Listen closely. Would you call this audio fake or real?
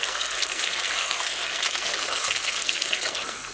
fake